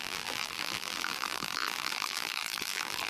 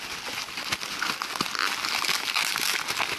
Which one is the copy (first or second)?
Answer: first